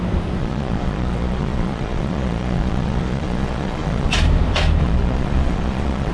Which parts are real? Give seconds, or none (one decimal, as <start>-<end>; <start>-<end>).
0.0-0.4; 4.1-4.8